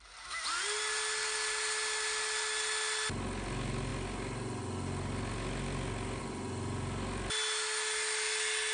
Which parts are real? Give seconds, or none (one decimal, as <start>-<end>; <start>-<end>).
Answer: 0.0-8.7